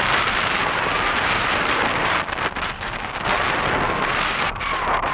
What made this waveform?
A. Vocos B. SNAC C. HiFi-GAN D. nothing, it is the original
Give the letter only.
D